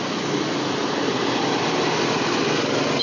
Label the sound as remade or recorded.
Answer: recorded